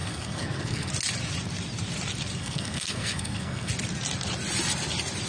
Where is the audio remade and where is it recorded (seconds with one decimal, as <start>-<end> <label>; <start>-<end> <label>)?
0.0-0.9 remade; 0.9-2.4 recorded; 2.4-3.7 remade; 3.7-5.3 recorded